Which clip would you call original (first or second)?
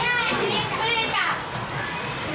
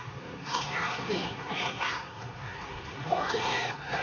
first